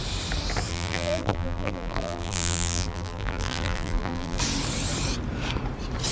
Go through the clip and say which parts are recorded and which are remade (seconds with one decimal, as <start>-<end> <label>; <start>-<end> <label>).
0.0-0.7 recorded; 0.7-4.4 remade; 4.4-6.1 recorded